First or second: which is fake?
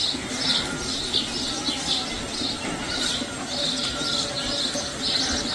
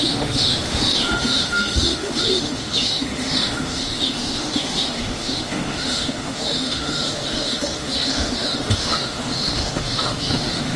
second